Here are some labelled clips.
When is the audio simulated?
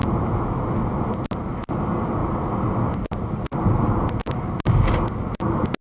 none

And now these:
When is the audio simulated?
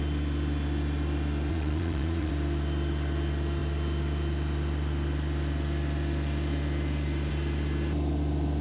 1.5-2.3 (vocoder, Vocos)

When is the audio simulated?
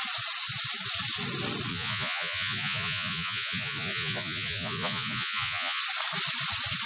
1.7-5.8 (vocoder, Vocos)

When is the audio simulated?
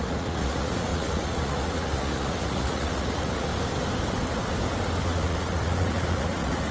0.0-3.5 (vocoder, Vocos); 5.0-6.7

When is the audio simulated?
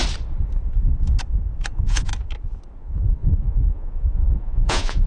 1.7-2.1 (vocoder, Vocos); 2.8-5.1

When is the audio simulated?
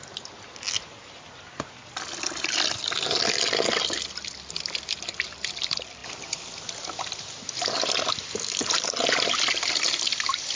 none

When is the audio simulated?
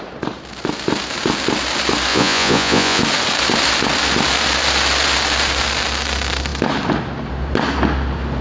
2.1-3.0 (vocoder, Vocos)